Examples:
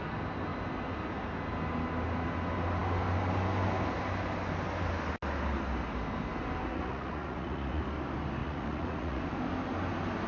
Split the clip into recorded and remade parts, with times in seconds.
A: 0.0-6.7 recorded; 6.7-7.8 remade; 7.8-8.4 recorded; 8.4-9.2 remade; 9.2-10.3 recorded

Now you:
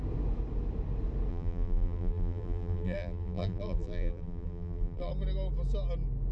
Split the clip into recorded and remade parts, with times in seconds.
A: 0.0-1.3 recorded; 1.3-5.1 remade; 5.1-6.3 recorded